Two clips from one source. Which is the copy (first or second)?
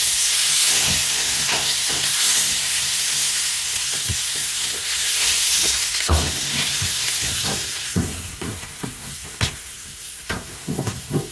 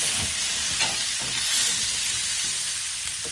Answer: first